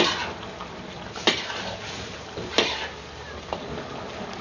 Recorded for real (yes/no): yes